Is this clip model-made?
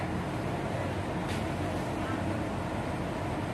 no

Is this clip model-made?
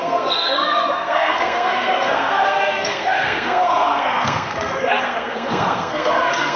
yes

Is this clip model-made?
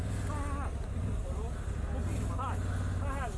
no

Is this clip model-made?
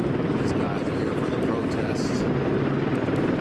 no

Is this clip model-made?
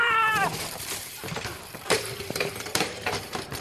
yes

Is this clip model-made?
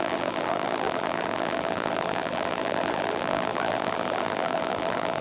yes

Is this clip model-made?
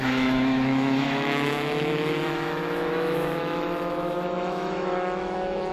yes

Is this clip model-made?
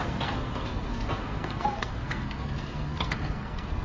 yes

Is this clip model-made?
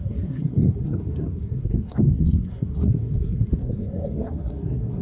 yes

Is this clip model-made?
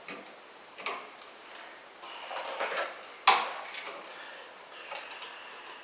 no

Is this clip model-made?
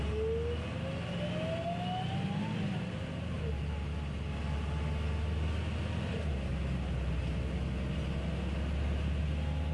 no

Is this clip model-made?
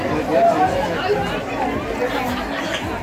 no